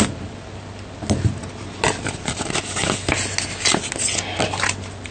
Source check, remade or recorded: recorded